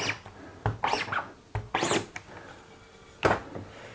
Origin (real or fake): real